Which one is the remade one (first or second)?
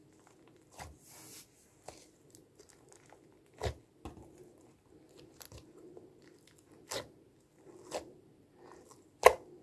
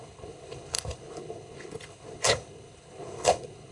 second